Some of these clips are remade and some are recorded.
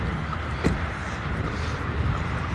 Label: remade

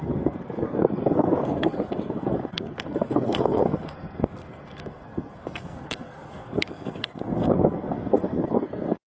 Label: remade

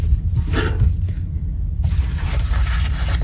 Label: recorded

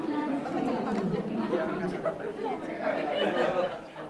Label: remade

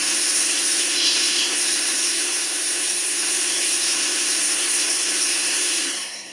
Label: remade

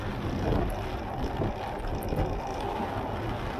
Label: recorded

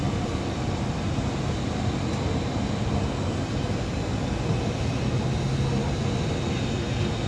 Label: recorded